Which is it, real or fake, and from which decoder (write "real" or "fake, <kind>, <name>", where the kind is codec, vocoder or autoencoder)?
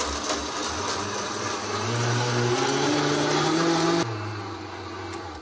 real